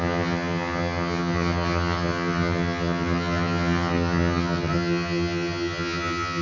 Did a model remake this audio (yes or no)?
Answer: yes